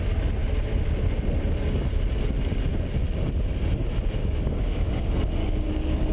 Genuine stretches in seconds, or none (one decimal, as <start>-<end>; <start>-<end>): 0.0-4.2; 5.0-5.4